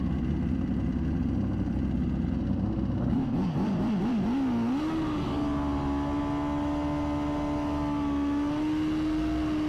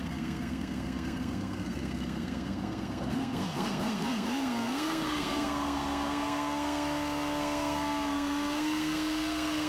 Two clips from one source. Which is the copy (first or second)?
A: second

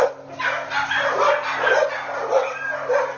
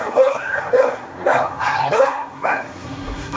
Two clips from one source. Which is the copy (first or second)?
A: second